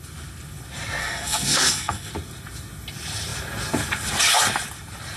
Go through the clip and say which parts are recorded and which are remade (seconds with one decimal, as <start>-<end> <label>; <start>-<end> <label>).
0.0-1.0 recorded; 1.0-2.1 remade; 2.1-5.2 recorded